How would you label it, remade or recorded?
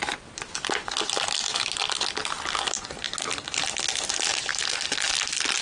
recorded